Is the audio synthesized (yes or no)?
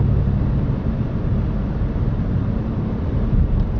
no